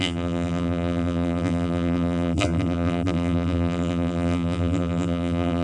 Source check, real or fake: fake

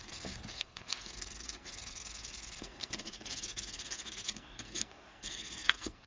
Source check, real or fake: fake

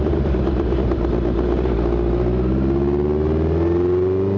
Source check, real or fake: real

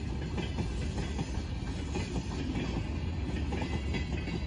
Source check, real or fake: real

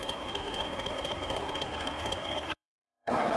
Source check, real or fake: fake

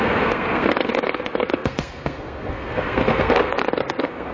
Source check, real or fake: fake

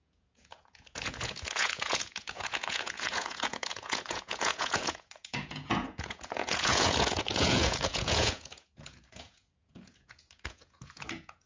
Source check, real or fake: fake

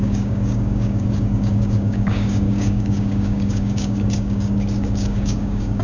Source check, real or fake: fake